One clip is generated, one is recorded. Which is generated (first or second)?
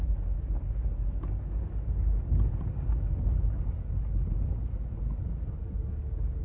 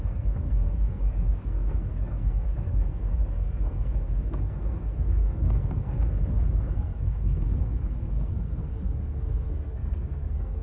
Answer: second